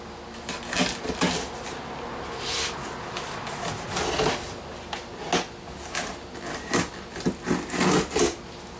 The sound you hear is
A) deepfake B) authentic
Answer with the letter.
B